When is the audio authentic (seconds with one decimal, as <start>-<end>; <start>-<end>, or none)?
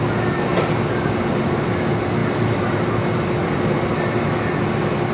0.0-5.1